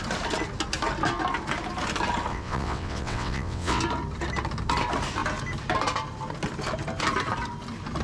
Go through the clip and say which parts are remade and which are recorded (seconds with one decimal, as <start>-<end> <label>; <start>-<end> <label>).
0.0-2.3 recorded; 2.3-3.8 remade; 3.8-8.0 recorded